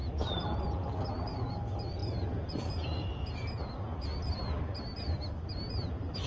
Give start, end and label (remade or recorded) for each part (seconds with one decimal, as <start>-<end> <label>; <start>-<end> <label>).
0.0-0.6 remade; 0.6-2.0 recorded; 2.0-3.7 remade; 3.7-6.3 recorded